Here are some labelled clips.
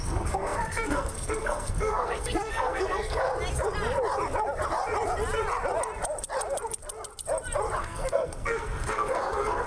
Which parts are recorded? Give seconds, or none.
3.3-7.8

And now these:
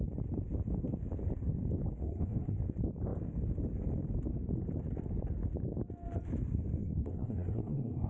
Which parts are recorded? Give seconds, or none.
0.0-2.0; 2.6-6.8

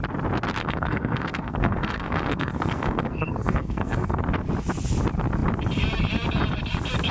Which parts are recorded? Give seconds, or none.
0.0-0.6; 4.2-7.1

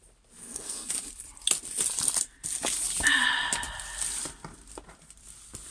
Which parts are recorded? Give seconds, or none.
0.0-0.4; 0.9-5.7

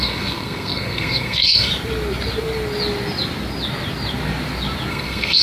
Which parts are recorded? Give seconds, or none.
1.7-4.9

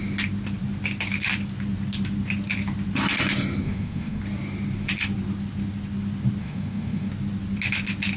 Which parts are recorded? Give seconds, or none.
0.0-3.6; 4.2-6.4; 7.1-8.2

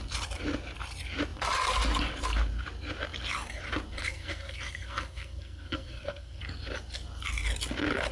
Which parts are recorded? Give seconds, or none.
0.0-4.0; 6.4-8.1